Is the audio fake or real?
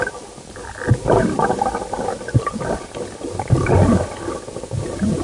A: real